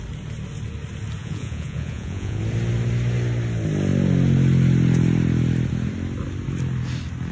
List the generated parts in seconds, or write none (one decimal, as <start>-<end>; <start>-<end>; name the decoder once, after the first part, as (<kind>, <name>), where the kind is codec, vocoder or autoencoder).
1.2-2.4 (vocoder, Vocos)